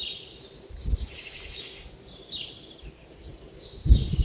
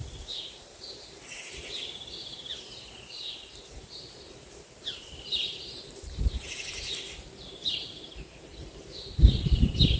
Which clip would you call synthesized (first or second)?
second